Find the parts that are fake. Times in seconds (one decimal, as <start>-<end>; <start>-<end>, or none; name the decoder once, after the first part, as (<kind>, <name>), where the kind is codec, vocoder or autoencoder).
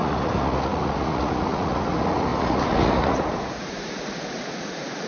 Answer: 0.0-5.1 (vocoder, Vocos)